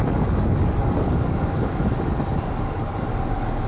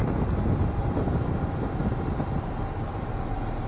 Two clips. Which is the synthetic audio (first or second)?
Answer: first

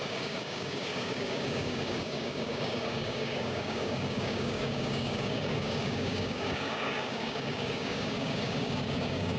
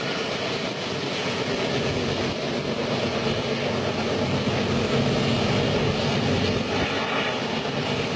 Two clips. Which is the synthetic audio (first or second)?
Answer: first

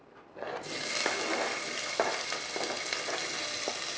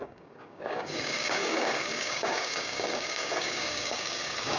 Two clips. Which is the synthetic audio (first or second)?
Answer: second